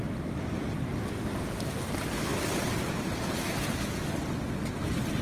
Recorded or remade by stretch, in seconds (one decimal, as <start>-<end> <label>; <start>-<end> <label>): 0.0-5.2 recorded